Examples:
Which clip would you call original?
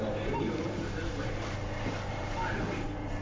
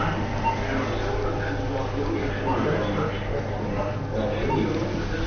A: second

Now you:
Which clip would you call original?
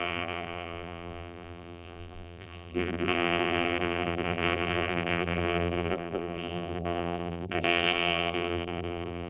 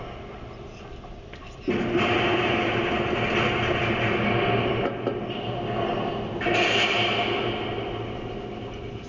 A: second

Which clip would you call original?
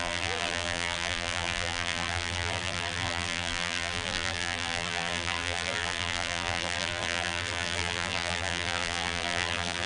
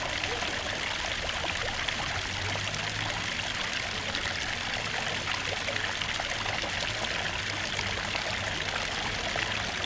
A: second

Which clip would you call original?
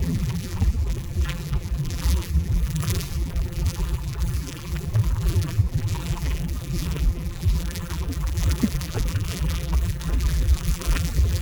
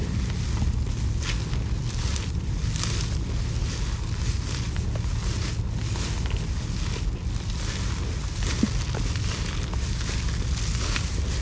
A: second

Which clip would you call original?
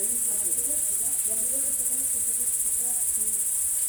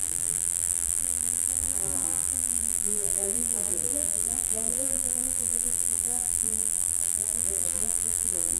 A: first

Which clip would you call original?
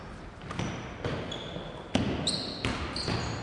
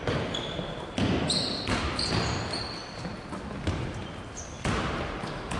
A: first